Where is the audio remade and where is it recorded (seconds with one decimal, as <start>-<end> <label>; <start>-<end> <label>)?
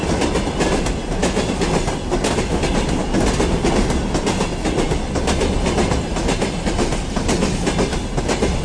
0.0-8.6 recorded